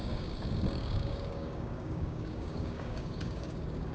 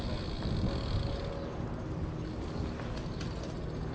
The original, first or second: second